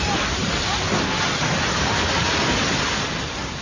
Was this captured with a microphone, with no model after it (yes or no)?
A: yes